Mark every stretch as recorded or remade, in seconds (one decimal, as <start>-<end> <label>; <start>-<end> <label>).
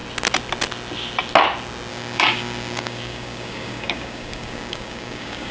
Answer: 0.0-1.9 recorded; 1.9-5.5 remade